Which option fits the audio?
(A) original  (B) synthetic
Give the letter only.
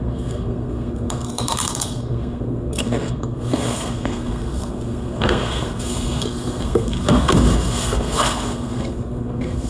B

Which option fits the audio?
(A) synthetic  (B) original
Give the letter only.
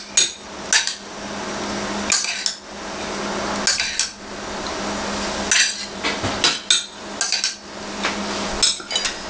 B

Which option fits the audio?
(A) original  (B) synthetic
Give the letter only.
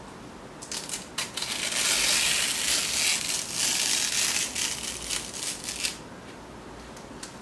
A